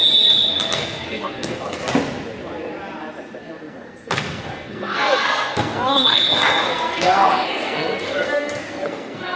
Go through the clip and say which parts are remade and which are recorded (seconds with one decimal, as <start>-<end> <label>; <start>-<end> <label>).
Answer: 0.0-0.5 recorded; 0.5-1.8 remade; 1.8-3.6 recorded; 3.6-9.4 remade